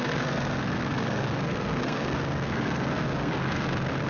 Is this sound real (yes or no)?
no